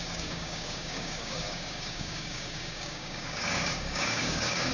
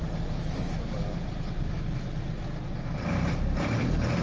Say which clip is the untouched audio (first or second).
second